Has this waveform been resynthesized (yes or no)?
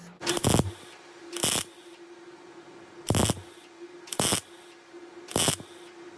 no